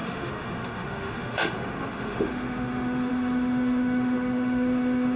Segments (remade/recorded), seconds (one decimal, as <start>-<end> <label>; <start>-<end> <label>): 0.0-5.2 remade